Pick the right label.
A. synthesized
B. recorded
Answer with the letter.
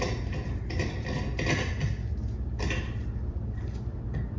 B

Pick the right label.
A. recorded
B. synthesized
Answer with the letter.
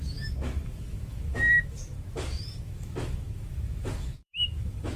B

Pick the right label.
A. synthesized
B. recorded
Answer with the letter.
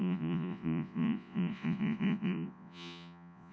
A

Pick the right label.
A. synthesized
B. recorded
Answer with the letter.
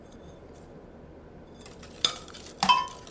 B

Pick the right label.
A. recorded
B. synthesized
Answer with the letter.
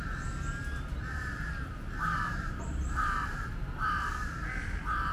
A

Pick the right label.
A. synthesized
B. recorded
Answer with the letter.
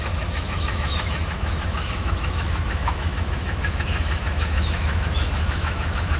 A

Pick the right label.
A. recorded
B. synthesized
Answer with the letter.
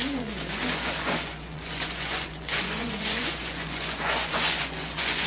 B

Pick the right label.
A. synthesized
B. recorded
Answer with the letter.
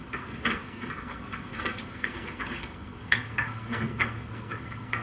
A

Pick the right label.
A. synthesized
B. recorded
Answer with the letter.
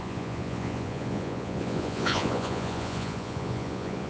A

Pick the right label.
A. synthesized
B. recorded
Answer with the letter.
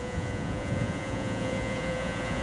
A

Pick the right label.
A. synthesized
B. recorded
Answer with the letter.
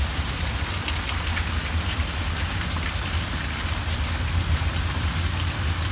B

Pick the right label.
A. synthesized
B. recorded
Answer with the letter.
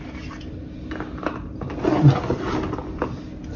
B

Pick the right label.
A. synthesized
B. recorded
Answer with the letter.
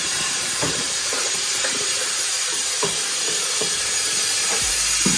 A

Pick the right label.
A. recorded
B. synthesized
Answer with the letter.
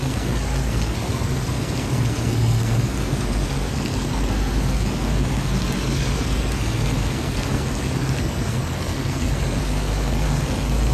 B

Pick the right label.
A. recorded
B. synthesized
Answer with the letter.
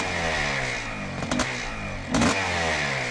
A